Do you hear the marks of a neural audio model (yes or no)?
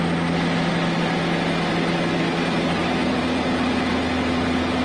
no